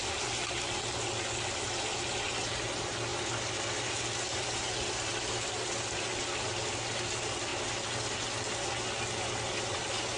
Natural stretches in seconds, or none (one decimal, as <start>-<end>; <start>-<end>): 0.0-10.2